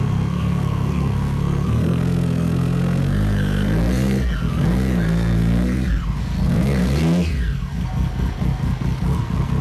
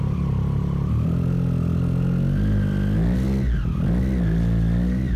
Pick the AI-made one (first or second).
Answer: first